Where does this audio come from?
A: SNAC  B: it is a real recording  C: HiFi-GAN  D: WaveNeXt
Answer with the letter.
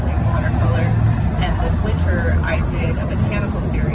B